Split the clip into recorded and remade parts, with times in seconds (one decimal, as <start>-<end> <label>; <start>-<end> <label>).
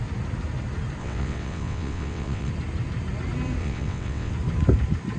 0.0-1.0 recorded; 1.0-2.5 remade; 2.5-3.6 recorded; 3.6-4.3 remade; 4.3-5.2 recorded